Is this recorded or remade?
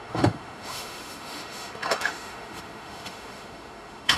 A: remade